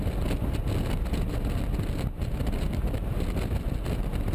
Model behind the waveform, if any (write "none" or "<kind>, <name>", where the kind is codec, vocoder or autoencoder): none